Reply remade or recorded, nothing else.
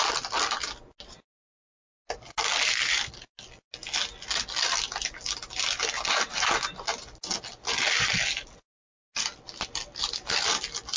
recorded